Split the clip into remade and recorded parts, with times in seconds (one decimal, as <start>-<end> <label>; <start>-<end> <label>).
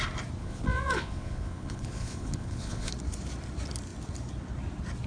0.0-0.4 recorded; 0.4-2.9 remade; 2.9-5.1 recorded